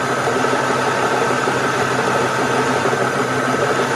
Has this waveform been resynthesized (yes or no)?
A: no